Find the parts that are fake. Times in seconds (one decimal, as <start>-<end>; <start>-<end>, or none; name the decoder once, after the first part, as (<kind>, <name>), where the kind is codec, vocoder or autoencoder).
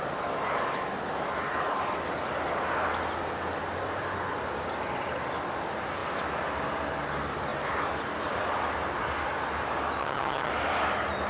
10.0-10.5 (vocoder, HiFi-GAN)